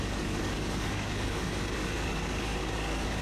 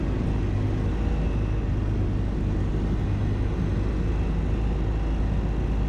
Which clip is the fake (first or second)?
first